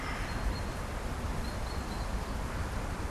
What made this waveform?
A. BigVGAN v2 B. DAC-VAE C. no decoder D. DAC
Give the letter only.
C